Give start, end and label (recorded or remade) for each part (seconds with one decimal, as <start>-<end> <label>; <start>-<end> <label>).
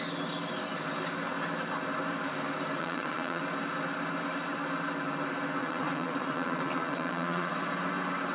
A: 0.0-2.8 recorded; 2.8-3.4 remade; 3.4-5.6 recorded; 5.6-7.5 remade; 7.5-8.3 recorded